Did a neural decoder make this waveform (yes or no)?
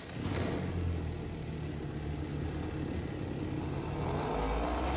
no